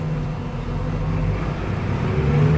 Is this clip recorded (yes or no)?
yes